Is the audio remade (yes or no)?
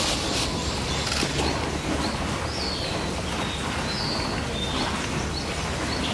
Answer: no